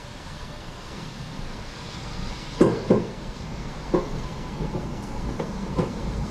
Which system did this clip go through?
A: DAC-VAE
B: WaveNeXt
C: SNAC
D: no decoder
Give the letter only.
C